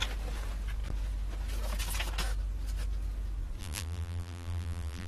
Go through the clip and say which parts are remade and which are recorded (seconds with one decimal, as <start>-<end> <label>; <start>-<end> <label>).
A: 0.0-3.6 recorded; 3.6-5.1 remade